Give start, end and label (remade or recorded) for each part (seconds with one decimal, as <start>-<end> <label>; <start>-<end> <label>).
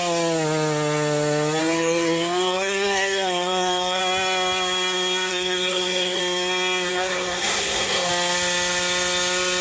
0.0-1.6 recorded; 1.6-4.0 remade; 4.0-5.3 recorded; 5.3-6.2 remade; 6.2-6.9 recorded; 6.9-8.1 remade; 8.1-9.6 recorded